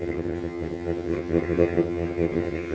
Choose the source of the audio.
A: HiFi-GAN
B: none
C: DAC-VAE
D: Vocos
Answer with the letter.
A